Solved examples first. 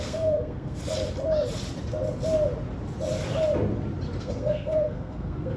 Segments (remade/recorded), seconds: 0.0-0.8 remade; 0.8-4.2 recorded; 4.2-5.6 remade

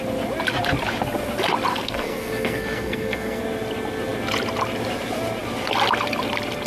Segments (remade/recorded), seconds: 0.0-1.7 recorded; 1.7-3.4 remade; 3.4-6.7 recorded

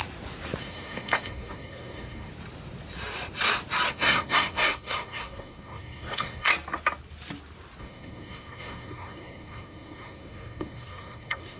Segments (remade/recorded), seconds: 0.0-0.6 recorded; 0.6-2.3 remade; 2.3-3.9 recorded; 3.9-6.5 remade; 6.5-7.8 recorded; 7.8-11.6 remade

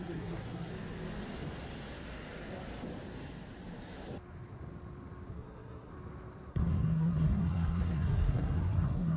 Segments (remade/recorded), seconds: 0.0-0.7 remade; 0.7-5.3 recorded; 5.3-5.9 remade; 5.9-6.5 recorded; 6.5-9.2 remade

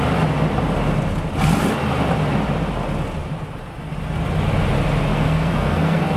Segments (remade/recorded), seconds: 0.0-5.1 recorded; 5.1-6.2 remade

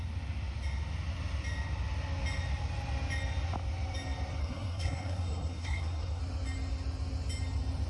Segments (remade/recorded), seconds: 0.0-4.4 recorded; 4.4-6.2 remade; 6.2-7.9 recorded

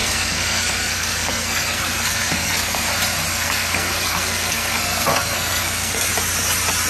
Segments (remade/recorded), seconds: 0.0-2.9 remade; 2.9-3.3 recorded; 3.3-6.1 remade; 6.1-6.9 recorded

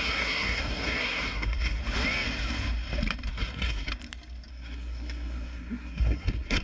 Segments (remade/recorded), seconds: 0.0-1.8 remade; 1.8-3.3 recorded; 3.3-3.9 remade; 3.9-4.5 recorded; 4.5-6.6 remade